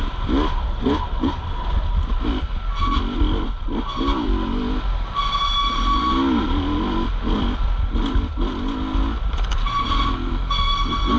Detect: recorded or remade recorded